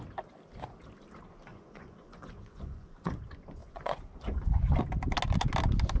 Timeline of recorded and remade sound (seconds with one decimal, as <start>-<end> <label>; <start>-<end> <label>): 0.0-1.5 recorded; 1.5-3.2 remade; 3.2-3.6 recorded; 3.6-4.8 remade; 4.8-6.0 recorded